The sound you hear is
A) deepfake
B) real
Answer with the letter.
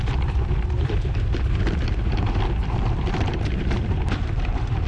A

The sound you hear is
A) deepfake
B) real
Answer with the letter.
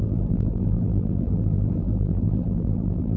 A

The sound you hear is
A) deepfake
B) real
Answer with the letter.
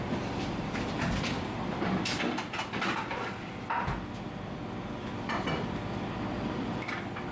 A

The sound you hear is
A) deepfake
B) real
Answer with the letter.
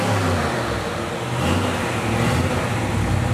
B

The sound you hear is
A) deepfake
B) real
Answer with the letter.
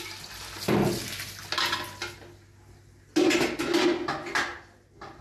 B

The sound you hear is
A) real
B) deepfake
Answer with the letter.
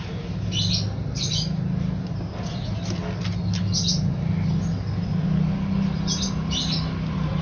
A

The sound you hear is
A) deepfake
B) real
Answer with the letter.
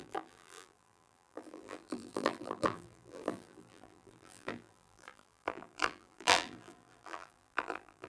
A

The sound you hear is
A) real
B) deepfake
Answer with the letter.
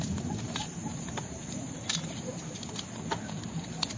B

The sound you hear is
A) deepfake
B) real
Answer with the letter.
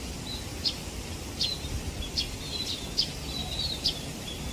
B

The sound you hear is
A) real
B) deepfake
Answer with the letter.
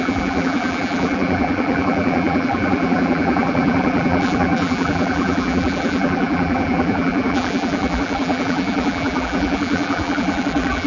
B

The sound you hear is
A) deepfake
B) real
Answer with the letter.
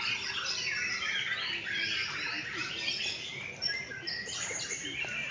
B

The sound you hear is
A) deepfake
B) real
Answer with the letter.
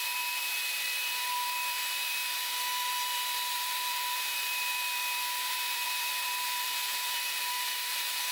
A